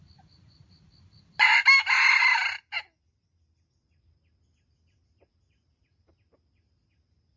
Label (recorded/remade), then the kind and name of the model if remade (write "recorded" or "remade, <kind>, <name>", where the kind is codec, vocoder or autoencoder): recorded